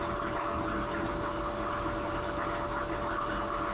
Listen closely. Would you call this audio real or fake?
real